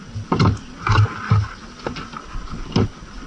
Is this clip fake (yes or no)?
no